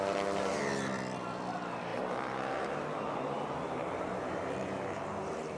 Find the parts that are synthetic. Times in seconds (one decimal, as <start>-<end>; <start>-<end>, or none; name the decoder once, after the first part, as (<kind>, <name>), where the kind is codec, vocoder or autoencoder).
1.9-5.6 (vocoder, BigVGAN v2)